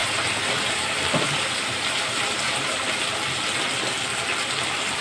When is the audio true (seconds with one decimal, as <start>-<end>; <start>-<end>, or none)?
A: 3.0-5.0